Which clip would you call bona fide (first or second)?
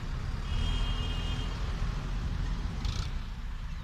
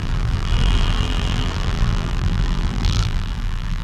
first